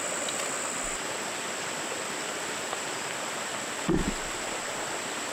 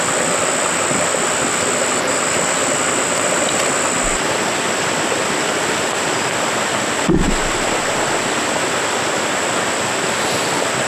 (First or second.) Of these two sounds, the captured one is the second